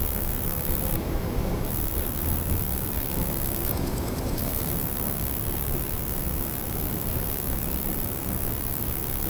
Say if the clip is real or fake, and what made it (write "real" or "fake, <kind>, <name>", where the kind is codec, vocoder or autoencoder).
fake, codec, DAC